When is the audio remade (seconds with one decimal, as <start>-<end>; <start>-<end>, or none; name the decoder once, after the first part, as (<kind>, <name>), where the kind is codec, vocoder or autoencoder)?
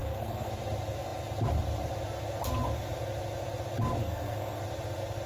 0.0-0.5 (codec, SNAC); 4.0-4.6